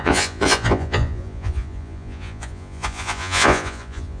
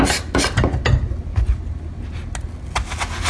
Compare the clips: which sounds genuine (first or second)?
second